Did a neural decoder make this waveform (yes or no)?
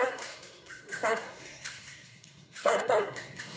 yes